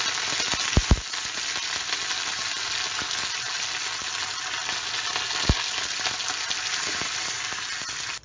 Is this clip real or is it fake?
real